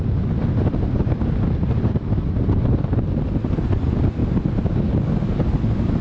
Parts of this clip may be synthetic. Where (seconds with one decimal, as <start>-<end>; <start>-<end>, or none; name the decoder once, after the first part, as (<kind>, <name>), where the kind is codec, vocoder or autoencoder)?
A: none